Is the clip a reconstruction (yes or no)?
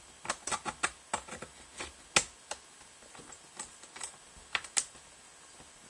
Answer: no